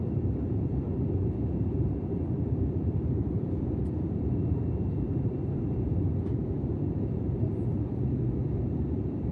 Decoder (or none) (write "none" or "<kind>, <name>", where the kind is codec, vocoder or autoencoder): vocoder, BigVGAN v2